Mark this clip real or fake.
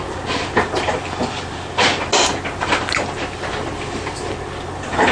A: real